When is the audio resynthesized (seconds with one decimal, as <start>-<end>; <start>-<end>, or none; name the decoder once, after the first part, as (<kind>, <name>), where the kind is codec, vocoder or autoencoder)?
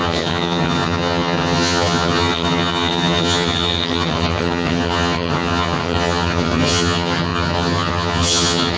0.0-8.8 (vocoder, HiFi-GAN)